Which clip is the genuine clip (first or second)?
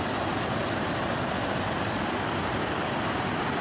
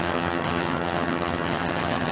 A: first